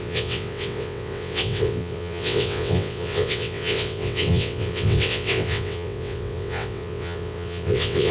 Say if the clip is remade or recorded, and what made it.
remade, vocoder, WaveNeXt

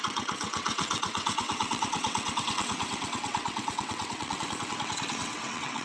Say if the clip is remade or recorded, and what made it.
remade, vocoder, WaveNeXt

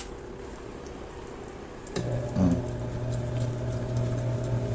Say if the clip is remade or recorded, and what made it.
recorded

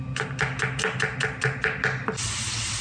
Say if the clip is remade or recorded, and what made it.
recorded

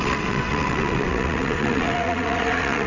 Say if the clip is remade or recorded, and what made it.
remade, vocoder, WaveNeXt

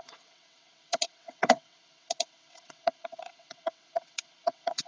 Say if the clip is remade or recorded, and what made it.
remade, vocoder, WaveNeXt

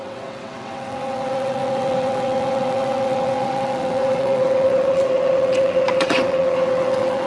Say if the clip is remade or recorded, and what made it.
remade, vocoder, WaveNeXt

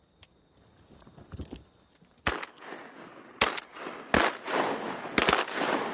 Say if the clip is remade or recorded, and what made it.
recorded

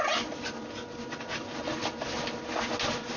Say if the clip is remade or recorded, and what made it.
recorded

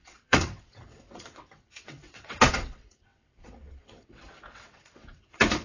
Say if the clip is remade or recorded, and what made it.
remade, vocoder, WaveNeXt